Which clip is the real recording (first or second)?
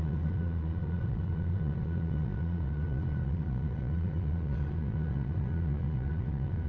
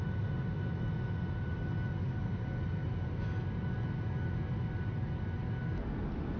second